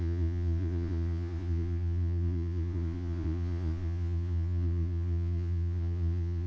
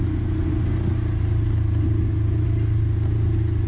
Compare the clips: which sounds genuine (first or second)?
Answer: second